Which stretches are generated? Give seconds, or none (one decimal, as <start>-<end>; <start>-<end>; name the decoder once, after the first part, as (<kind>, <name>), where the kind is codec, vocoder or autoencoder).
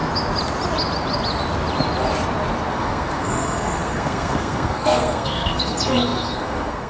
2.7-6.9 (codec, SNAC)